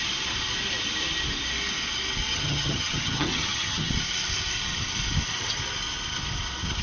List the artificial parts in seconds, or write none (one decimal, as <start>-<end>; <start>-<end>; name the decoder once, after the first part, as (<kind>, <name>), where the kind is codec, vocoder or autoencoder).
2.3-3.9 (vocoder, HiFi-GAN)